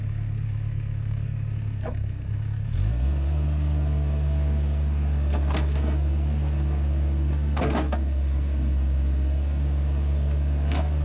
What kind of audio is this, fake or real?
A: fake